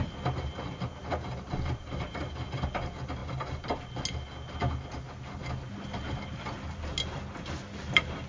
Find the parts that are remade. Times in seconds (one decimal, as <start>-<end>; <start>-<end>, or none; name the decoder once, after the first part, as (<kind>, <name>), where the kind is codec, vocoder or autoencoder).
1.0-2.3 (vocoder, BigVGAN v2)